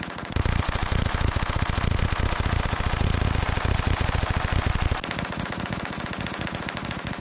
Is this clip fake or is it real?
real